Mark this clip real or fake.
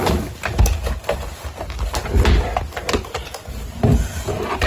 real